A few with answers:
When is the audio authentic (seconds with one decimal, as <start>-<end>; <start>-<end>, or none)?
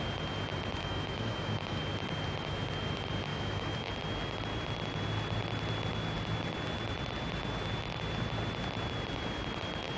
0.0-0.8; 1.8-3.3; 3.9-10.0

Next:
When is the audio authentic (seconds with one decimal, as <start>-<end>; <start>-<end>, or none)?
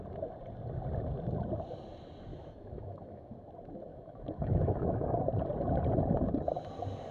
0.0-2.3; 3.3-3.9; 5.2-7.1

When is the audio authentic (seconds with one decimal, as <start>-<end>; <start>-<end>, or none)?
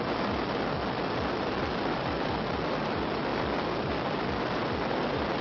0.0-5.4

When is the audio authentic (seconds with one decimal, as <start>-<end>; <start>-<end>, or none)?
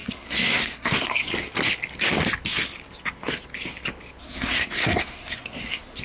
1.3-4.2